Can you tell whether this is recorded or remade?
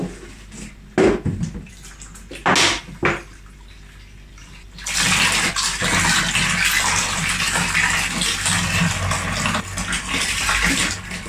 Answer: recorded